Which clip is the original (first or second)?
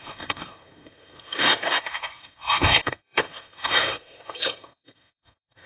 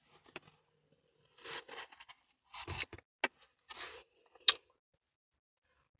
second